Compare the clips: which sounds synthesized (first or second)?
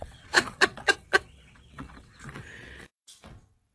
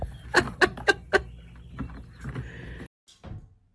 first